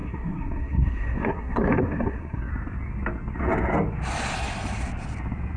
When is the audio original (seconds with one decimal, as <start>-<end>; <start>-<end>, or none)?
2.5-5.6